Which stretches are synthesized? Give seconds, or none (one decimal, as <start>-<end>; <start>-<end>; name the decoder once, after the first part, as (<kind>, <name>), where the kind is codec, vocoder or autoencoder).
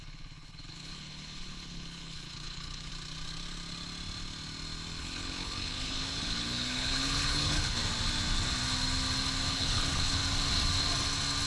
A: 0.0-2.9 (codec, HILCodec); 5.0-7.8; 9.5-10.2